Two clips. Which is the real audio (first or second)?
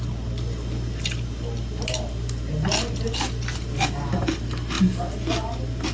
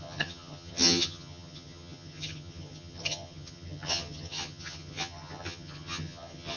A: first